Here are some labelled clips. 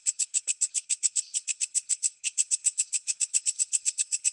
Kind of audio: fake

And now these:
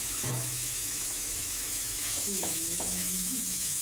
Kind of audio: fake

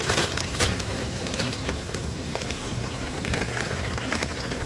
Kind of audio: fake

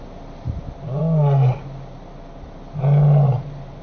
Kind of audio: real